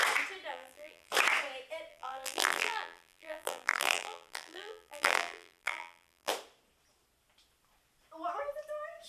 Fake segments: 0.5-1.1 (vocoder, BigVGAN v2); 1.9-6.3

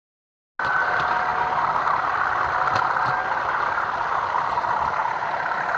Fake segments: none

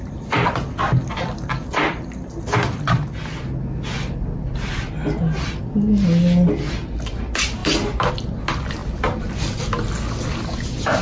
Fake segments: 7.6-8.1 (vocoder, BigVGAN v2)

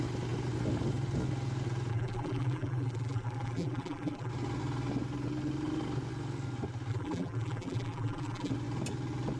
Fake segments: 1.9-4.3 (vocoder, BigVGAN v2); 6.9-8.5

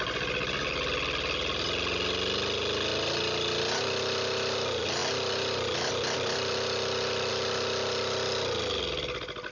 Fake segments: none

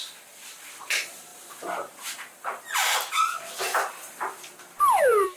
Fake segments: 0.0-1.3 (vocoder, BigVGAN v2); 3.9-5.4

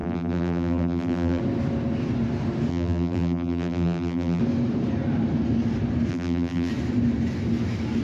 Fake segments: 0.0-1.4 (vocoder, BigVGAN v2); 2.7-4.4; 6.1-6.7

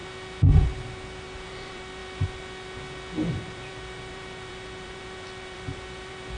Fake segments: 1.5-2.0 (vocoder, BigVGAN v2); 3.3-6.4